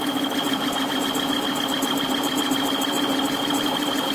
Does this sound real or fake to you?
real